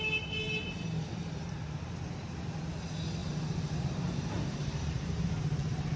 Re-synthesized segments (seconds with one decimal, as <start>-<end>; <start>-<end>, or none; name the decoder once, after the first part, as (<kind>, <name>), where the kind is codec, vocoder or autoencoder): 3.2-6.0 (vocoder, BigVGAN v2)